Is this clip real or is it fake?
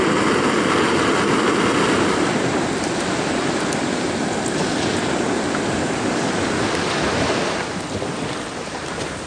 real